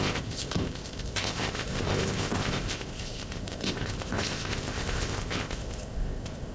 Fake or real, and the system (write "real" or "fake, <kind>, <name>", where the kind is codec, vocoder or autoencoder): fake, codec, ZipCodec